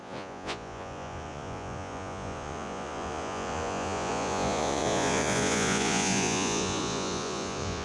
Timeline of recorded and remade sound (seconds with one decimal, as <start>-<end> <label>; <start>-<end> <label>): 0.0-7.8 remade